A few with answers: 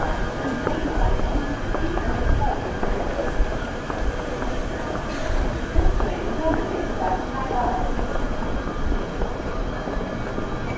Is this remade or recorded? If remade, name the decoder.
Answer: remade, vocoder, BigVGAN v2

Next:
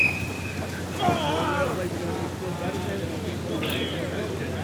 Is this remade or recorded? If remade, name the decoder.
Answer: recorded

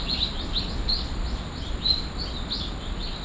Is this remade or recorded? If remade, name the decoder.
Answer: recorded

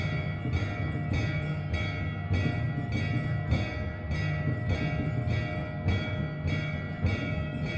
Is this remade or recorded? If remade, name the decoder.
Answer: recorded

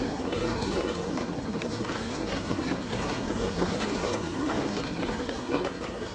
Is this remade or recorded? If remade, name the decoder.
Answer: remade, codec, SNAC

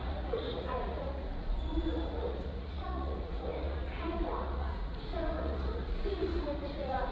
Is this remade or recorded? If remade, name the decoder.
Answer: remade, vocoder, Vocos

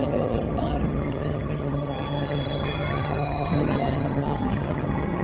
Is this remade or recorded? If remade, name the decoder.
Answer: remade, vocoder, HiFi-GAN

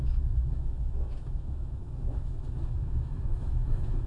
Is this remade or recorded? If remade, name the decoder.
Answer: remade, autoencoder, DAC-VAE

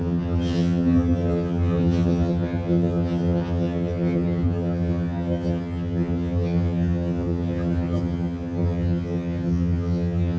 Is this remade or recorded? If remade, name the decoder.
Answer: remade, vocoder, HiFi-GAN